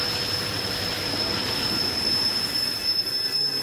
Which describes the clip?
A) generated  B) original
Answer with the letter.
A